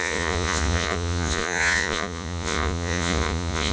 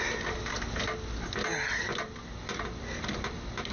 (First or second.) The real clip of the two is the second